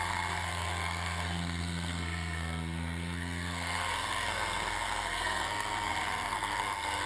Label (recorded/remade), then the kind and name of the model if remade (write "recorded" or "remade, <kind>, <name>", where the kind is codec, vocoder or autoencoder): remade, codec, SNAC